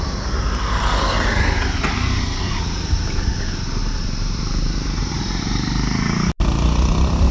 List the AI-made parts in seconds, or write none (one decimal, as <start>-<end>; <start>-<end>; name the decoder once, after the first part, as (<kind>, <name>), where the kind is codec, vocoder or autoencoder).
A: 3.8-5.4 (vocoder, BigVGAN v2)